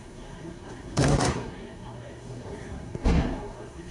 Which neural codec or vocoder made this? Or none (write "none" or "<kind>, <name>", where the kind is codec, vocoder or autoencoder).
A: codec, SNAC